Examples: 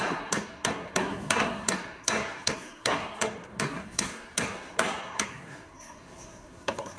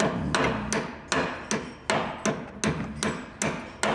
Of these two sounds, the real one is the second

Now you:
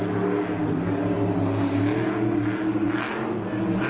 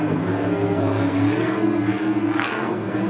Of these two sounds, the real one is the first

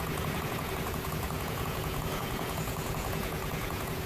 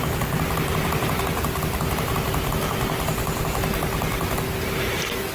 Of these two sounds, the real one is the second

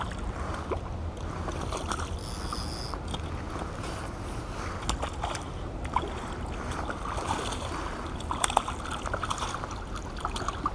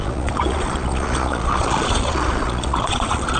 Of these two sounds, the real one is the first